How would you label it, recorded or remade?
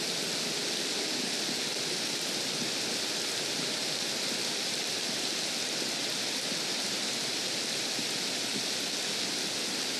recorded